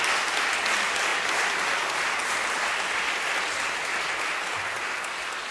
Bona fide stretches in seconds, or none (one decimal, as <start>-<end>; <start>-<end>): 0.0-5.5

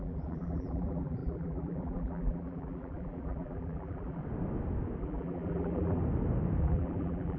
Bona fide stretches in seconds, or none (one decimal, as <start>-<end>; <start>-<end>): 4.2-5.0; 6.0-6.6

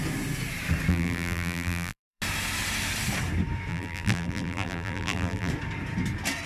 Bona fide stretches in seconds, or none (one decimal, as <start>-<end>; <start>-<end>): 0.0-0.9; 2.2-3.7; 5.5-6.5

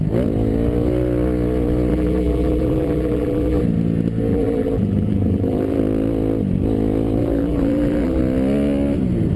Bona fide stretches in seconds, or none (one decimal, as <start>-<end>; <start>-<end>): 0.0-1.9; 3.6-4.3; 5.8-7.2; 8.2-9.4

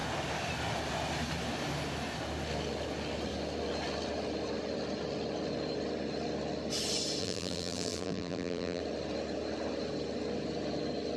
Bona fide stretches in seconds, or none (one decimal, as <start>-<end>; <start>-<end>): 0.0-7.2; 8.8-11.2

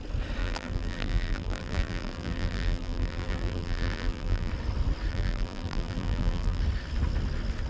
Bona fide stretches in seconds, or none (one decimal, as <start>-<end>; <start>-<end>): 0.0-0.4; 4.5-5.1; 6.6-7.7